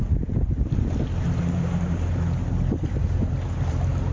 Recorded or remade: remade